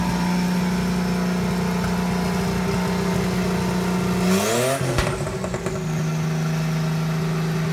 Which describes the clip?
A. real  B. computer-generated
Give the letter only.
A